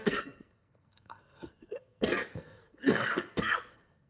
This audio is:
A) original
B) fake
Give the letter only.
B